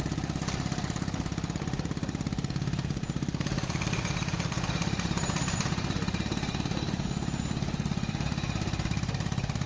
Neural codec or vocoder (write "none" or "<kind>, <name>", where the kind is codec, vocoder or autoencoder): vocoder, BigVGAN v2